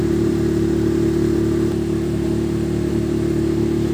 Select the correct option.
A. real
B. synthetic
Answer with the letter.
B